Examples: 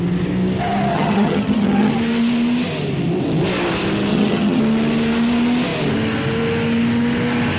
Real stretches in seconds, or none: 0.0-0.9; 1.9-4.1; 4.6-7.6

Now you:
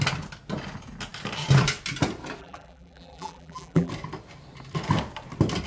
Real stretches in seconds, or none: 0.0-2.4; 3.9-5.7

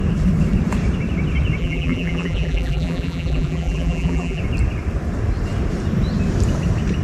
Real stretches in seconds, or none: 0.0-1.6; 4.4-7.0

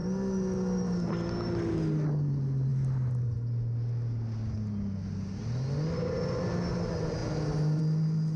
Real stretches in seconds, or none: 0.0-8.4

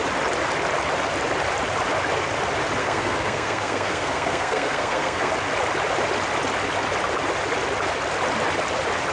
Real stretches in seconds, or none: 0.0-2.8; 5.3-9.1